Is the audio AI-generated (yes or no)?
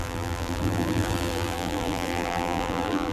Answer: yes